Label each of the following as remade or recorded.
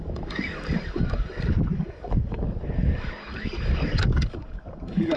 remade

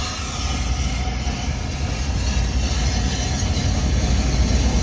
recorded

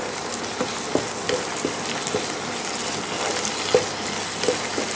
recorded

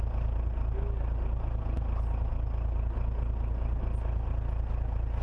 recorded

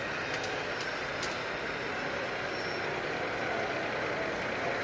recorded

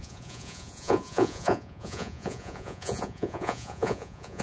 remade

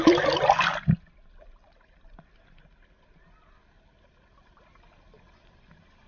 recorded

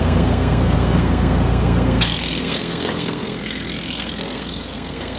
remade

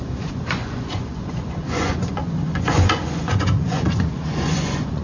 remade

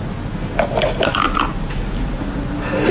recorded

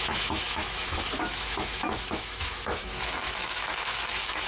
remade